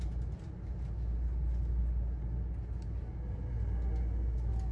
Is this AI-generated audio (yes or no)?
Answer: no